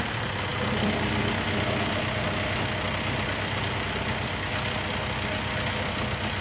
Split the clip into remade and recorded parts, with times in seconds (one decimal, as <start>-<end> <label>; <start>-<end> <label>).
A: 0.0-6.4 recorded

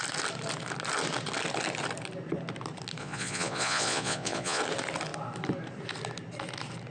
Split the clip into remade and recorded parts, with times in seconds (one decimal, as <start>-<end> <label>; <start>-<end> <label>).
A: 0.0-3.0 recorded; 3.0-4.6 remade; 4.6-6.9 recorded

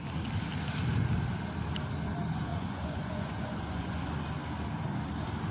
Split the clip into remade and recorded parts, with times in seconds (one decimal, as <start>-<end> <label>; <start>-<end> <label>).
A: 0.0-2.5 recorded; 2.5-4.1 remade; 4.1-5.5 recorded

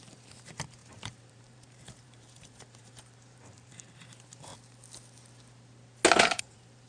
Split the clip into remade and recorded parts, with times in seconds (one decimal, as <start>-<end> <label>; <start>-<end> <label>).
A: 0.0-4.5 remade; 4.5-6.2 recorded; 6.2-6.9 remade

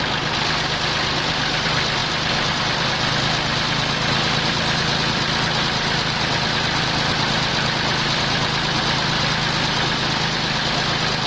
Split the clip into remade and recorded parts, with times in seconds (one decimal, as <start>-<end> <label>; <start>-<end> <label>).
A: 0.0-11.3 recorded

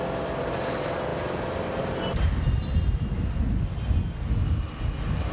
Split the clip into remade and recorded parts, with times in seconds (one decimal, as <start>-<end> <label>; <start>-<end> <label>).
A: 0.0-5.3 recorded

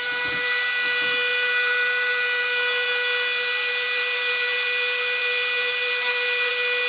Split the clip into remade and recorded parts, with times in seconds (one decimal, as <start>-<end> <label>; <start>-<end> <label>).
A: 0.0-6.9 recorded